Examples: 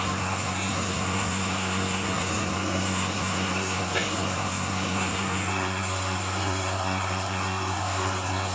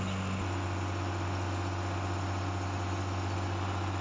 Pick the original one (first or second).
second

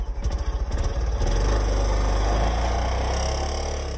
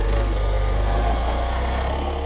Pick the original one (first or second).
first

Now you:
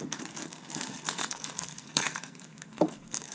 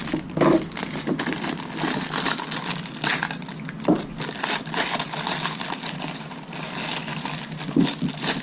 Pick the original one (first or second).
second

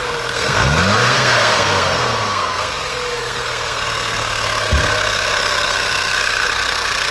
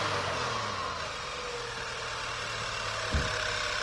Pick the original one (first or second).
second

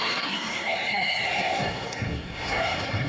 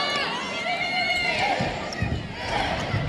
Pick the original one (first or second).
second